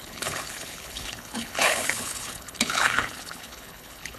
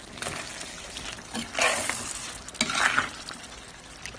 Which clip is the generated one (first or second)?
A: first